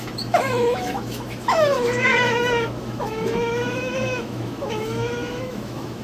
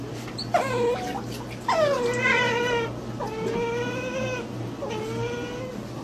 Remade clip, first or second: first